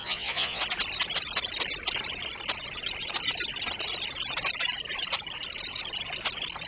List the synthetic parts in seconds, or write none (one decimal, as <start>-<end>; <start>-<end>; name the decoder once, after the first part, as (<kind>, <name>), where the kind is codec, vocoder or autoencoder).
0.0-0.6 (vocoder, Vocos)